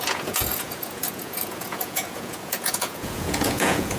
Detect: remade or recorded remade